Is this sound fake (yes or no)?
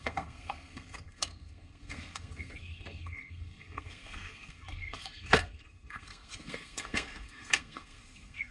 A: yes